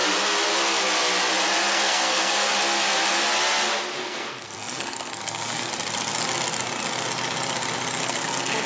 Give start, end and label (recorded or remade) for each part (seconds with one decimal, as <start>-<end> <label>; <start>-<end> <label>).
0.0-1.7 recorded; 1.7-2.5 remade; 2.5-4.0 recorded; 4.0-5.7 remade; 5.7-8.0 recorded; 8.0-8.7 remade